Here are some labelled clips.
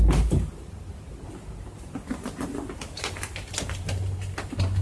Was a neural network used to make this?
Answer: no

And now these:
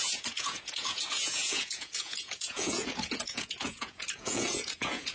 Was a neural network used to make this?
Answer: yes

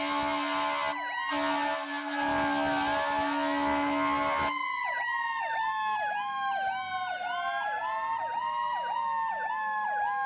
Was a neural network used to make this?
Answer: no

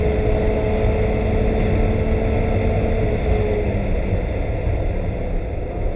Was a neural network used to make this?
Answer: no